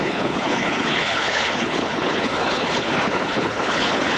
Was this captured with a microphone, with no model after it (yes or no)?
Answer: no